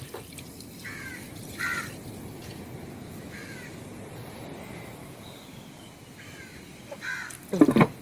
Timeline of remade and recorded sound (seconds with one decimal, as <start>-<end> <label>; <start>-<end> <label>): 0.0-5.0 recorded; 5.0-5.9 remade; 5.9-8.0 recorded